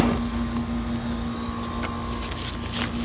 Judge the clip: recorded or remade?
recorded